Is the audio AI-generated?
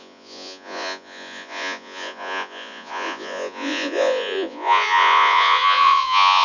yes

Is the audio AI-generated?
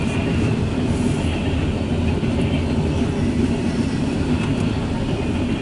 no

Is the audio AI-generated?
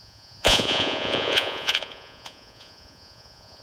yes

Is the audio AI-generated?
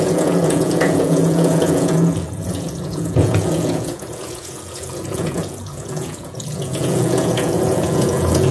yes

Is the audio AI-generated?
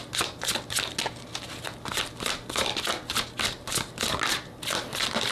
no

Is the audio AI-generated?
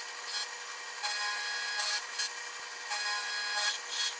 no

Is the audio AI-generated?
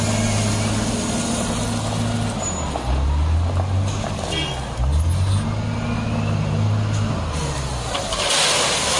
no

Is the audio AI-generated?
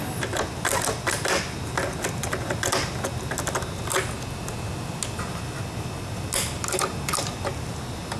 no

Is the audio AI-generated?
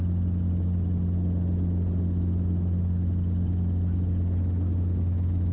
no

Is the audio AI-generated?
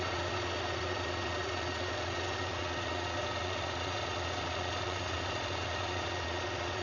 yes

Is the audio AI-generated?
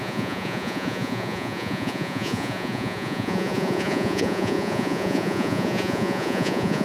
yes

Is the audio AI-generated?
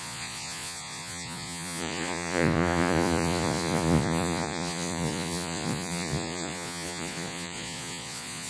yes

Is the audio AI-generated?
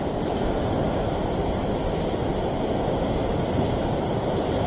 no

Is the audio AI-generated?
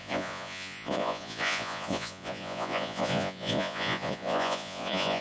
yes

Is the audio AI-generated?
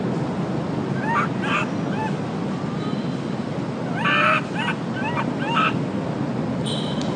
no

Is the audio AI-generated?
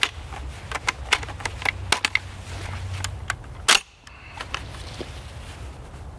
no